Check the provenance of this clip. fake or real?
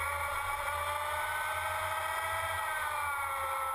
real